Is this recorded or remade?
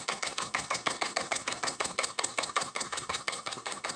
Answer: remade